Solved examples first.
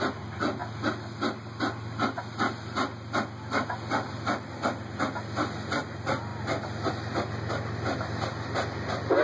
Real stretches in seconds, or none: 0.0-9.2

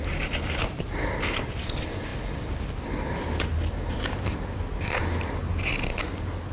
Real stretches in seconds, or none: 0.0-6.5

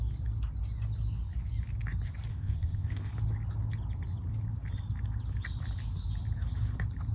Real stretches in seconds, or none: 0.0-2.3; 3.1-7.1

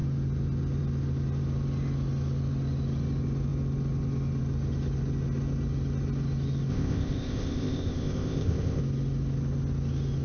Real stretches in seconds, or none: 0.0-6.7; 8.8-10.2

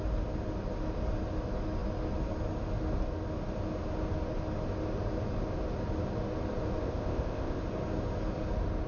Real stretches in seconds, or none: 0.0-6.8; 7.6-8.9

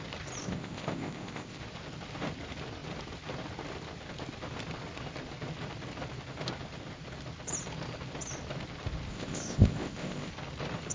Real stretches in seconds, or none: 0.0-0.4; 1.6-9.1; 10.3-10.9